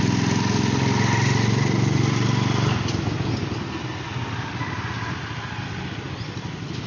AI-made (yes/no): no